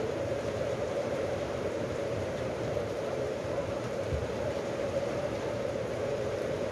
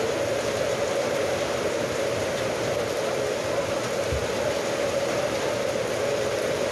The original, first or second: second